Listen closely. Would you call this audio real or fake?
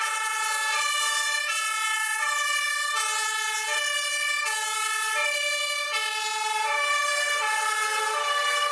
fake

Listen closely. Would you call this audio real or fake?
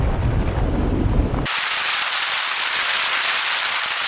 real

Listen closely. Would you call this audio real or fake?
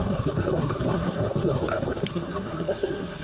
fake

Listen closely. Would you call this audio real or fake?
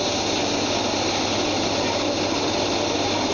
real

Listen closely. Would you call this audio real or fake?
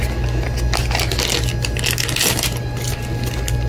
real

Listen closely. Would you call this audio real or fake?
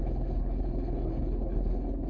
fake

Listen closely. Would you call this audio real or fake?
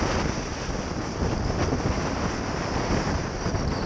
real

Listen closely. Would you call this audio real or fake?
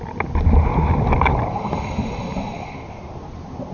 real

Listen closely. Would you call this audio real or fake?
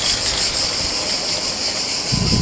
real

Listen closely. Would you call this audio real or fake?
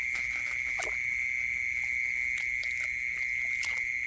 real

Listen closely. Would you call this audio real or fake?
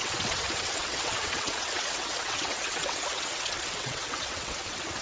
fake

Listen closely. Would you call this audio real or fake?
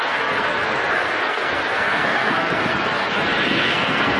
fake